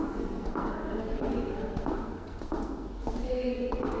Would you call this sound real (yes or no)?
no